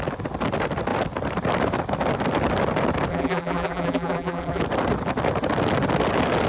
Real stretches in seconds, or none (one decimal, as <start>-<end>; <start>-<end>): 0.0-3.1; 4.6-6.5